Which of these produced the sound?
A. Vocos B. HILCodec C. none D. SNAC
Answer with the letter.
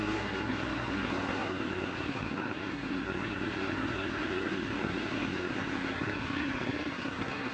D